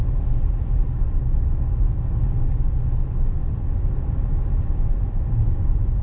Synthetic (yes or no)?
no